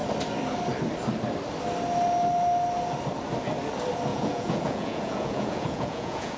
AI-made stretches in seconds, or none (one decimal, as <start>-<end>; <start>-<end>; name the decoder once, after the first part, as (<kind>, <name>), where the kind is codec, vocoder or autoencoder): 4.1-6.4 (vocoder, Vocos)